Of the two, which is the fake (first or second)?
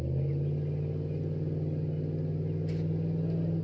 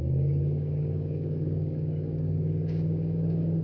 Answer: second